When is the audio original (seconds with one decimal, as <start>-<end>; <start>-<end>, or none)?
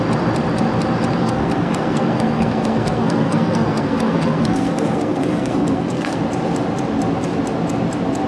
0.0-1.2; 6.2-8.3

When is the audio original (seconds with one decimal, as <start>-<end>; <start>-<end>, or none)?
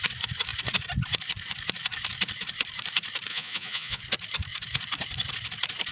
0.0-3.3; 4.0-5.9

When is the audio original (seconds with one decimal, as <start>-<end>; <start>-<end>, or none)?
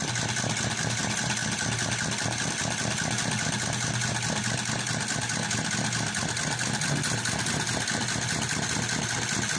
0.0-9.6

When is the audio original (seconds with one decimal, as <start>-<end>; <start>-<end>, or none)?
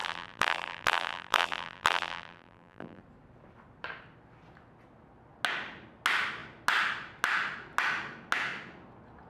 3.0-9.3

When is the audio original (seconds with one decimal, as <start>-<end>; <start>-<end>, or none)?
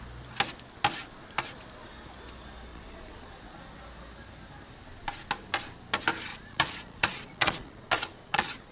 0.0-2.7; 3.6-6.3